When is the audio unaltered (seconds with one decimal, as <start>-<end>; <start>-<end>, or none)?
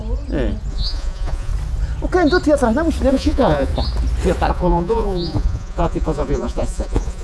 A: 0.0-0.7; 1.5-3.1; 3.7-4.5